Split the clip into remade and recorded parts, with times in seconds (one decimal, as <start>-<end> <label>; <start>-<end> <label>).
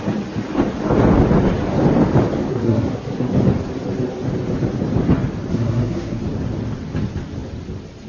0.0-2.5 recorded; 2.5-3.3 remade; 3.3-5.5 recorded; 5.5-6.2 remade; 6.2-8.1 recorded